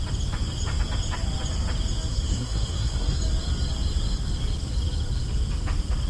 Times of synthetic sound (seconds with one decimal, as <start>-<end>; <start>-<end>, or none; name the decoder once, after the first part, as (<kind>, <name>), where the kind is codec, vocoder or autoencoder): 2.1-3.2 (codec, SNAC)